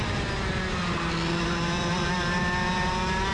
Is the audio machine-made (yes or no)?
no